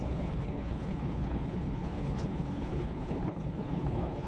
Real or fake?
fake